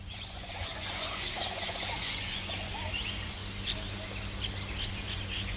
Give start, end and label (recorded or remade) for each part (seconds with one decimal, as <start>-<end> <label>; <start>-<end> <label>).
0.0-3.4 remade; 3.4-4.9 recorded; 4.9-5.6 remade